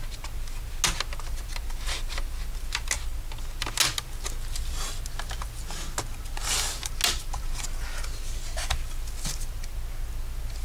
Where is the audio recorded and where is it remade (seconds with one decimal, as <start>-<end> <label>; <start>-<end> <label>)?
0.0-10.6 recorded